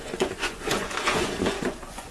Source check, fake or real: fake